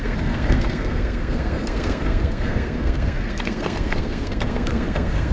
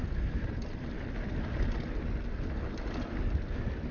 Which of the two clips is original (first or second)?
second